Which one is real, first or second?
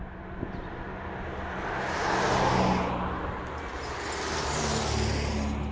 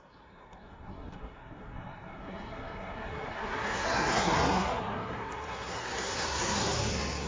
first